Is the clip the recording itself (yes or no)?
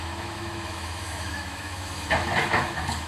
no